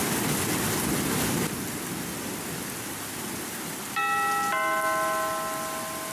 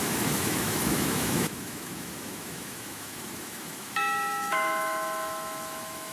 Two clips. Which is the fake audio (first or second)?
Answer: second